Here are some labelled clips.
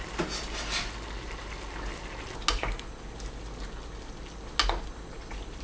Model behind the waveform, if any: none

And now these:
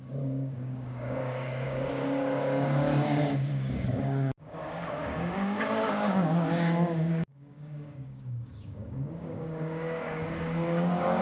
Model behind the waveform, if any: codec, DAC